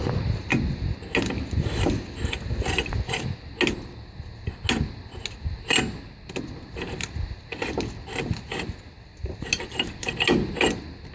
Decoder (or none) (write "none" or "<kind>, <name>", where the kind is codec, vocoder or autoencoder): none